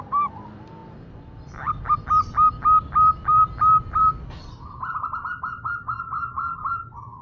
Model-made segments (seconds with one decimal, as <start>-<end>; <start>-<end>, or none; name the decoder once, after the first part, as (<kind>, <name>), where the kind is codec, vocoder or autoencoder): none